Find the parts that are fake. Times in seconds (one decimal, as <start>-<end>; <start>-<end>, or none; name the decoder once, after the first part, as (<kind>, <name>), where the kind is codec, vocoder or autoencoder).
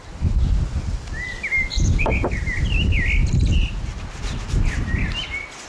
1.7-2.8 (vocoder, BigVGAN v2); 3.2-4.0